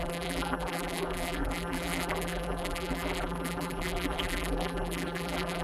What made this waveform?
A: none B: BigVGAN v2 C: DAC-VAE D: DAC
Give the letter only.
B